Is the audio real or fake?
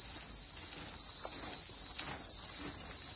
real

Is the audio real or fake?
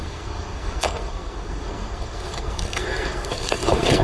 fake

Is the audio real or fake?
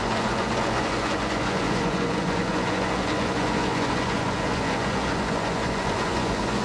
fake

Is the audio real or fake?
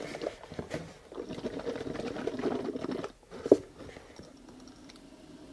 real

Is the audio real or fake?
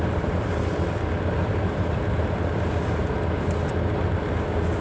real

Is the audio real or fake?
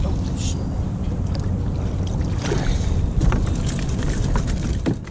real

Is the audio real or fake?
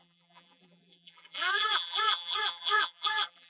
fake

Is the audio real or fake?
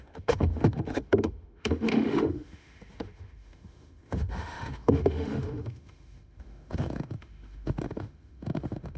fake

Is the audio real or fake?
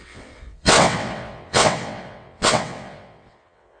fake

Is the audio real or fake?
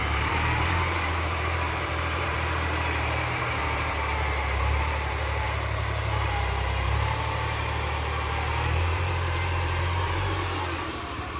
fake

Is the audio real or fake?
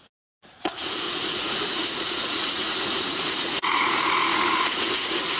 fake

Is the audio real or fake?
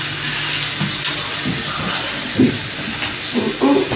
real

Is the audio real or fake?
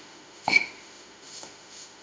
fake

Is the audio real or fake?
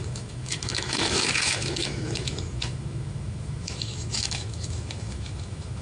fake